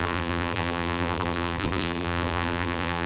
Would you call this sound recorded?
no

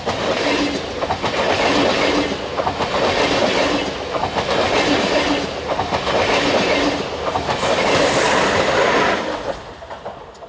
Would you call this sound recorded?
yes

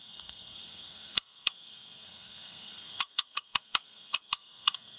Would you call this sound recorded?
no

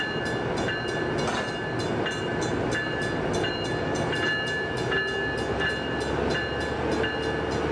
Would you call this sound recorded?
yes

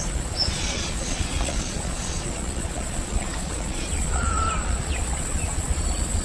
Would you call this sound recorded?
no